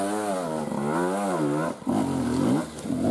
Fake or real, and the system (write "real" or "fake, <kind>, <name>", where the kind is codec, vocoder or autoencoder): real